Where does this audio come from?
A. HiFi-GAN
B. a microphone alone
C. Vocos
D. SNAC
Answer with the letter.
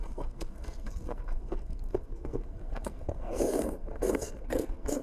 D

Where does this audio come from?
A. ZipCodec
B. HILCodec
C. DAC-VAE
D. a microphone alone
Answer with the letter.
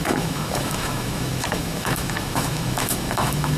C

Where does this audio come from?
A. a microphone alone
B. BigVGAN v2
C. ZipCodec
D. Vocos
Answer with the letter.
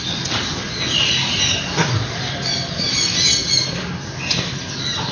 A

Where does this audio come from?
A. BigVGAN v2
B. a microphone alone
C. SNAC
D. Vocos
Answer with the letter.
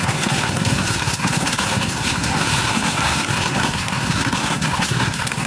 C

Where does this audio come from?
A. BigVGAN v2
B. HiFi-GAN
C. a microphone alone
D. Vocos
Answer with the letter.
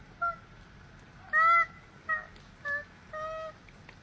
C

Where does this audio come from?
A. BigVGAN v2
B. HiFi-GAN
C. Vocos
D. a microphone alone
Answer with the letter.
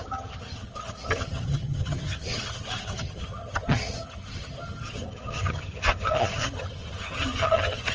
B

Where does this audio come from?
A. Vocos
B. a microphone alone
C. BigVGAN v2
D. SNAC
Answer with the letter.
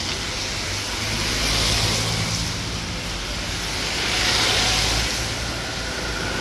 B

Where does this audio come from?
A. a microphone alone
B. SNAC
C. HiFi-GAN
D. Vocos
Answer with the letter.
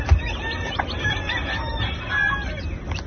A